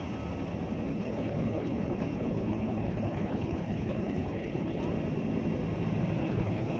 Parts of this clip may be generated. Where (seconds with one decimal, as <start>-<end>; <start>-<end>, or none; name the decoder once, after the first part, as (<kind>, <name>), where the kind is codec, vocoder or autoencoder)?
0.9-4.8 (codec, HILCodec); 6.2-6.8